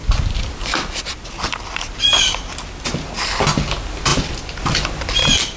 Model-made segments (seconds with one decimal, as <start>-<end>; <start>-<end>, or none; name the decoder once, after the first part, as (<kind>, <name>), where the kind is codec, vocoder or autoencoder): 0.0-1.0 (vocoder, BigVGAN v2); 4.1-4.6